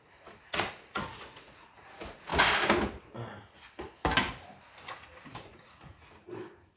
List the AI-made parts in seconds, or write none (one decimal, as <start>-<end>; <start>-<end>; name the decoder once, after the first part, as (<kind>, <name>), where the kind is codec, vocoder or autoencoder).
0.0-2.3 (vocoder, Vocos); 4.9-6.8